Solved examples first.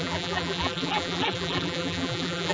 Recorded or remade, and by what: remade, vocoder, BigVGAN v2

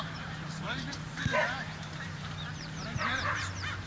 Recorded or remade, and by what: remade, vocoder, BigVGAN v2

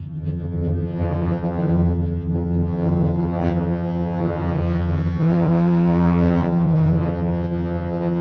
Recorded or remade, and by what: remade, vocoder, HiFi-GAN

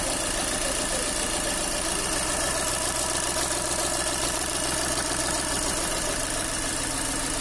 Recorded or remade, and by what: recorded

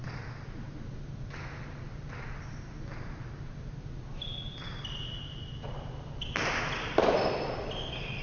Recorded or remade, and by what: recorded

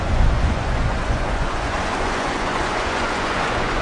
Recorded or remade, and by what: remade, vocoder, Vocos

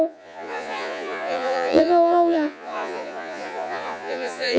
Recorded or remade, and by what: remade, vocoder, Vocos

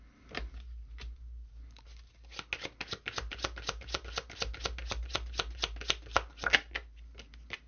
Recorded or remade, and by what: recorded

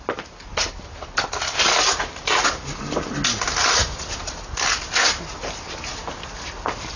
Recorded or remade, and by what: recorded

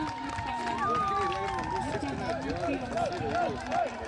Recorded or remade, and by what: recorded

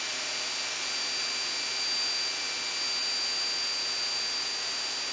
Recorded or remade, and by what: recorded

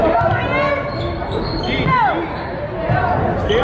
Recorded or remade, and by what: recorded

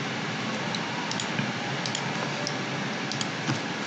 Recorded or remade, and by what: recorded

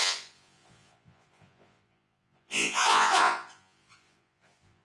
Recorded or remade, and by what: remade, vocoder, Vocos